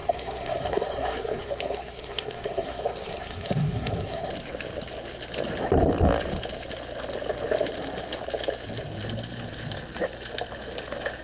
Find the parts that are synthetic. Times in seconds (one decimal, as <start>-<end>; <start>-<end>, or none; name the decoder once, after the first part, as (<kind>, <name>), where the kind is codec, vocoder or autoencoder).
0.0-4.3 (codec, SNAC)